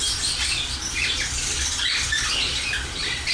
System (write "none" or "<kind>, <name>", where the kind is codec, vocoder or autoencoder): vocoder, BigVGAN v2